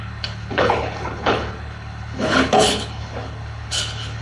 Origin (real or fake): fake